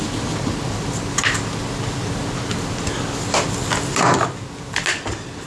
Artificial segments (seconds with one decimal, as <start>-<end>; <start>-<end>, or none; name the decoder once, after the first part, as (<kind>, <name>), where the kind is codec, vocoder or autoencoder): none